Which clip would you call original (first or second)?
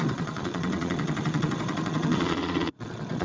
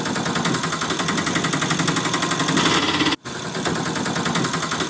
second